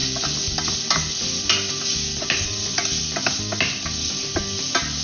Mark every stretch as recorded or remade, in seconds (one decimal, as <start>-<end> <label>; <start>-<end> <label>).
0.0-5.0 recorded